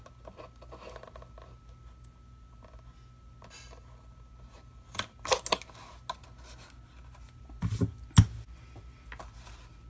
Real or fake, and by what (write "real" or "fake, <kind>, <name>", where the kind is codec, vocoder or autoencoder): real